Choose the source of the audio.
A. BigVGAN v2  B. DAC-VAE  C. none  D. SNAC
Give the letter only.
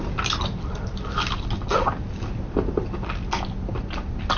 C